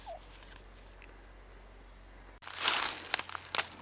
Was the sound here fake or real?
real